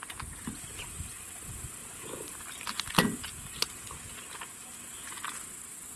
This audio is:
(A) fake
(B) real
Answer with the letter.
B